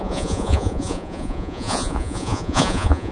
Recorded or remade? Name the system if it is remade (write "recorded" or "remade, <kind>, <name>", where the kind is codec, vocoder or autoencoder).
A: remade, vocoder, Vocos